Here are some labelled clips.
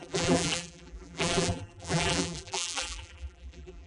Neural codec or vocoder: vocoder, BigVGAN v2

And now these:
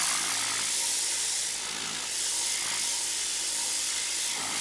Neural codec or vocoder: none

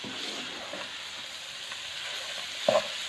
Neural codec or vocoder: none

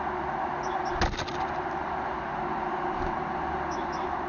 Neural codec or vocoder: none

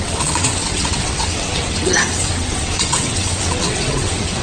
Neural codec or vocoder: vocoder, WaveNeXt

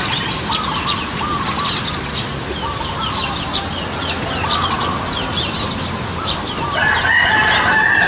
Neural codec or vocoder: none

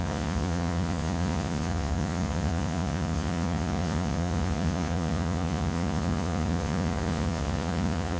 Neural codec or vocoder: vocoder, Vocos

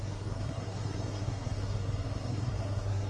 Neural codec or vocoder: codec, SNAC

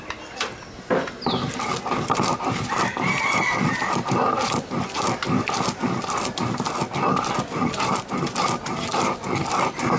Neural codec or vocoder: none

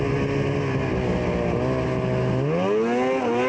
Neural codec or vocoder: none